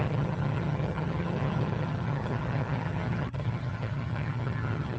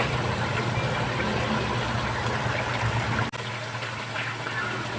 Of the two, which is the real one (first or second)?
second